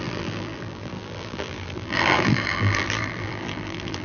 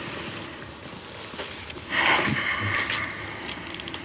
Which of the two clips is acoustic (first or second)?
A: second